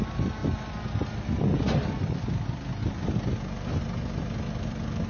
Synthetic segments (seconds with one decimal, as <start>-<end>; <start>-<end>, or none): none